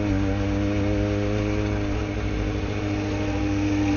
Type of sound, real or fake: real